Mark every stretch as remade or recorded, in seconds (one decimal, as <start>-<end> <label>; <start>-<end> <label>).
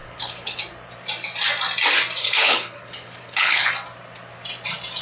0.0-0.6 remade; 0.6-2.2 recorded; 2.2-3.7 remade; 3.7-5.0 recorded